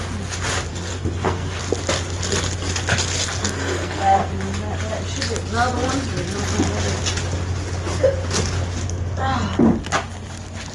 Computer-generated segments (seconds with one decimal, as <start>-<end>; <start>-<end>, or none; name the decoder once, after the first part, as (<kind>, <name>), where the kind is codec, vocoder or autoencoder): 0.7-1.6 (codec, SNAC); 3.4-4.3